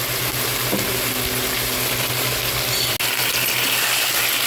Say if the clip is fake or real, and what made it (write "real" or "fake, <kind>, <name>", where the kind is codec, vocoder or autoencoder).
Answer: real